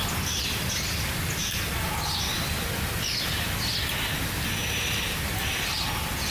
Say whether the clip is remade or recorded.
recorded